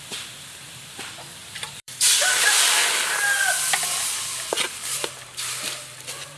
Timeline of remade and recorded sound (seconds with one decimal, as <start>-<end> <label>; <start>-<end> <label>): 0.0-1.4 recorded; 1.4-2.3 remade; 2.3-6.4 recorded